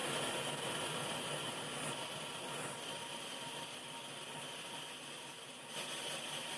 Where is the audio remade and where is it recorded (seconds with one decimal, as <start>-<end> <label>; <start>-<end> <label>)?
0.0-6.6 recorded